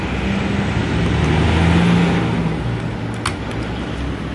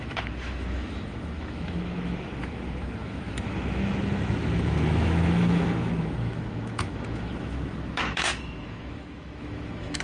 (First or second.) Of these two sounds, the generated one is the second